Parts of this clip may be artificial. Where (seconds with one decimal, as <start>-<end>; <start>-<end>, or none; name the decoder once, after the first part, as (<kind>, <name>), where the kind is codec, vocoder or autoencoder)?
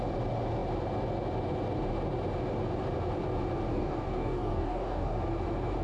3.7-5.2 (codec, DAC)